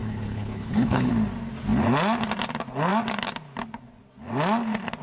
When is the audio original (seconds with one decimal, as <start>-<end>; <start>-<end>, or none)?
1.1-5.0